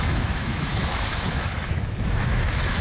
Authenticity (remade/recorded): remade